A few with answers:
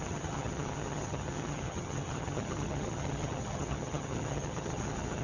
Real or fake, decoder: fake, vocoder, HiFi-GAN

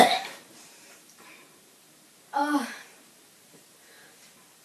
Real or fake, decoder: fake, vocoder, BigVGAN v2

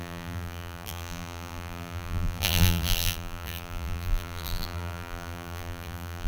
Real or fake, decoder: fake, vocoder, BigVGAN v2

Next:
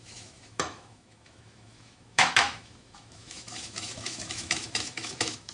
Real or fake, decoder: fake, autoencoder, DAC-VAE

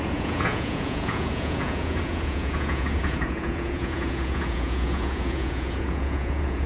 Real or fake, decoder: fake, vocoder, Vocos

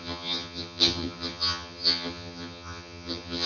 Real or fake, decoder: fake, vocoder, HiFi-GAN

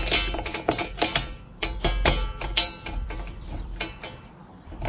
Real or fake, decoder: fake, vocoder, BigVGAN v2